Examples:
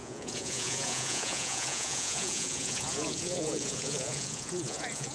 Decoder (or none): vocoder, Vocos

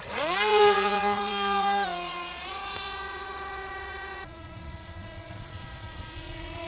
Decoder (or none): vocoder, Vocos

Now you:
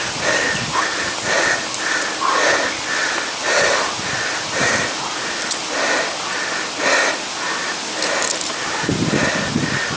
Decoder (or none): none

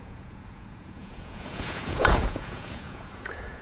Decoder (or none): vocoder, Vocos